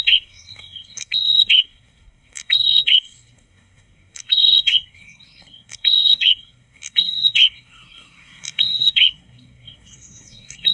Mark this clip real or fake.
fake